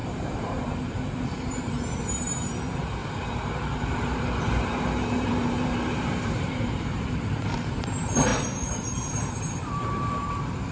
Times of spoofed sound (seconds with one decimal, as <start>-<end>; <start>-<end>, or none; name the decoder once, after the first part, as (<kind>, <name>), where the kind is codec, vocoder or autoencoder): 0.0-10.7 (vocoder, BigVGAN v2)